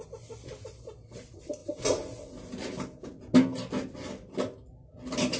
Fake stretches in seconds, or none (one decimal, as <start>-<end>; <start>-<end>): none